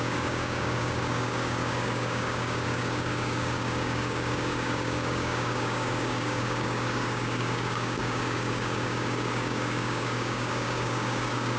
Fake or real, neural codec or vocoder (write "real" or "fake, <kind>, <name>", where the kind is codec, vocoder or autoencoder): fake, codec, DAC